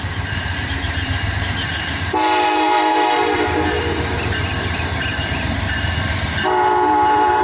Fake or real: fake